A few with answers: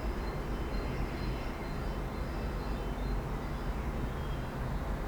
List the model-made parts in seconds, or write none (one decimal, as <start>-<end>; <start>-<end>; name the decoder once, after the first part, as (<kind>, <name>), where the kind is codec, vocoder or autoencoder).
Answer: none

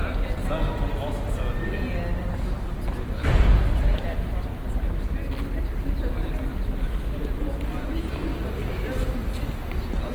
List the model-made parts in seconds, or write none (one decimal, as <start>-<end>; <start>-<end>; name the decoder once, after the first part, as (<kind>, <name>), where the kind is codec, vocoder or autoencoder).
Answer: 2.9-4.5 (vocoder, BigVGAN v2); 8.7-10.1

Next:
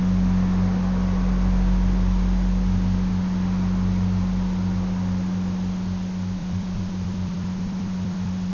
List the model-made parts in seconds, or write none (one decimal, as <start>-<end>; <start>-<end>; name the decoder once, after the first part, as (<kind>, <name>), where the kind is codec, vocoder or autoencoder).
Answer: 6.4-8.5 (vocoder, BigVGAN v2)

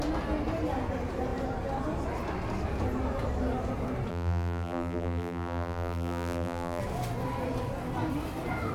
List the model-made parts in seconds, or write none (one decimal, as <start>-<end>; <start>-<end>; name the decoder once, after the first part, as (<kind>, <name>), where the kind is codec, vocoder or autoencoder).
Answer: 4.1-6.8 (vocoder, BigVGAN v2)

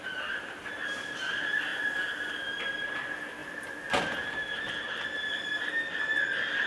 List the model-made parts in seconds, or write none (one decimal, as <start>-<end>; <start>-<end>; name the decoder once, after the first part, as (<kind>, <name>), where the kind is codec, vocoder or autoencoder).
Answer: none